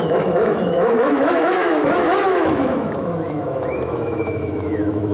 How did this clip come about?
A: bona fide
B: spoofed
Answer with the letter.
B